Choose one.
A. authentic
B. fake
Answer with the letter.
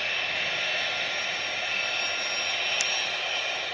A